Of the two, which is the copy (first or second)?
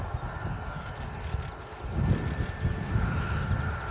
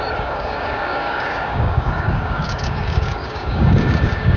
second